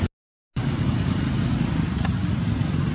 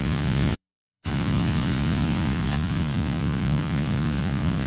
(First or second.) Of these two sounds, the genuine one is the first